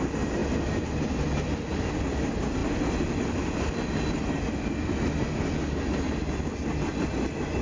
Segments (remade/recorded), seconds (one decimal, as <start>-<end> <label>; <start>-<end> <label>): 0.0-7.6 recorded